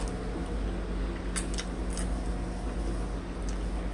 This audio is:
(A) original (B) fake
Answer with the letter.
A